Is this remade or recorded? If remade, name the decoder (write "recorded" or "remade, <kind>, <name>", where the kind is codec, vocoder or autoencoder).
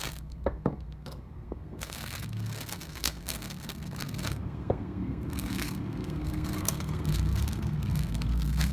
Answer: remade, codec, SNAC